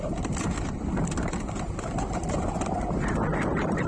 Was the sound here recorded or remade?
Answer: recorded